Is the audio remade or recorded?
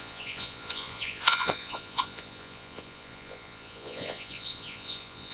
remade